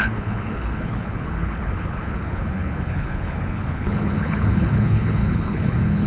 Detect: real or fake fake